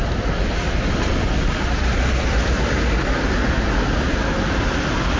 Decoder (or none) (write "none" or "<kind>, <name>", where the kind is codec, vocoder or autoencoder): none